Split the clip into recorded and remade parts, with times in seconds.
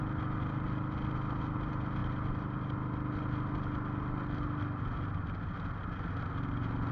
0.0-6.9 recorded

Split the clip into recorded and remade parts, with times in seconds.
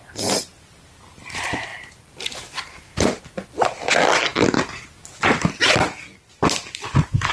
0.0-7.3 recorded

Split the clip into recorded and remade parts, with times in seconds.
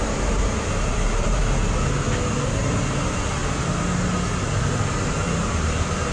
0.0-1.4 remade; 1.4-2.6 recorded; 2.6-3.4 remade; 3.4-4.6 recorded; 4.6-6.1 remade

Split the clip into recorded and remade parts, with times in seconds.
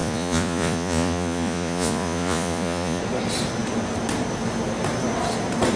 0.0-3.0 remade; 3.0-5.8 recorded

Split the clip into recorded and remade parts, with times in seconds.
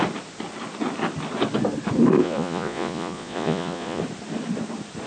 0.0-2.2 recorded; 2.2-4.0 remade; 4.0-5.1 recorded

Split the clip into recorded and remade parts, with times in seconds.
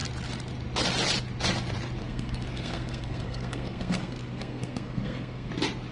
0.0-2.0 recorded; 2.0-5.5 remade; 5.5-5.9 recorded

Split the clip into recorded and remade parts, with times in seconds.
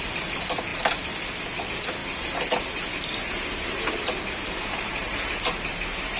0.0-2.0 remade; 2.0-4.1 recorded; 4.1-5.0 remade; 5.0-5.7 recorded; 5.7-6.2 remade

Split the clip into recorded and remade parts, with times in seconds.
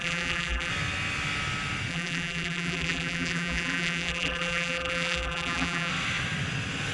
0.0-0.7 remade; 0.7-1.9 recorded; 1.9-5.9 remade; 5.9-6.9 recorded